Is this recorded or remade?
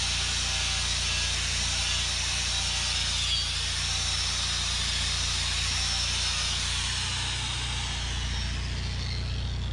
recorded